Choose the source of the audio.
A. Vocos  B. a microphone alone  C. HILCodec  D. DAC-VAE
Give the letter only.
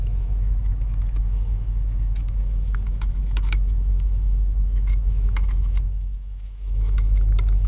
D